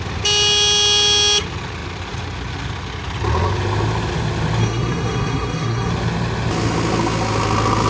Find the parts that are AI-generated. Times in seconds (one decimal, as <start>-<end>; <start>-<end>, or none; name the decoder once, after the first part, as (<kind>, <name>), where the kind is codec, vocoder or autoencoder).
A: 4.6-5.9 (codec, SNAC)